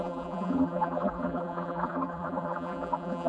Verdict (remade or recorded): remade